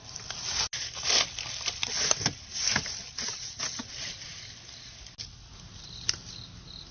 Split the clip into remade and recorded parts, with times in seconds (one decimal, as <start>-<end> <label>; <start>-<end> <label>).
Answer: 0.0-6.9 recorded